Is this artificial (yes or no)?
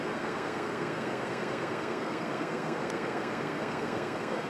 yes